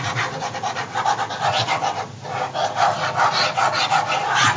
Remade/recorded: recorded